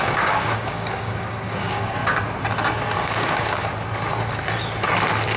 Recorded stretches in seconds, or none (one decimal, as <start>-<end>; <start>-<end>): 2.0-3.0; 3.6-5.4